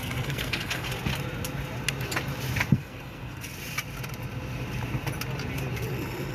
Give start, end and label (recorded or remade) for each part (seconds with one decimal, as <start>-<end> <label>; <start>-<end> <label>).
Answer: 0.0-0.9 remade; 0.9-2.7 recorded; 2.7-3.5 remade; 3.5-6.3 recorded